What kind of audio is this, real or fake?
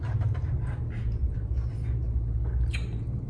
fake